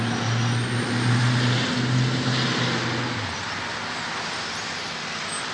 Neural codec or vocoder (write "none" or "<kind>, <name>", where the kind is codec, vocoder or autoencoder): none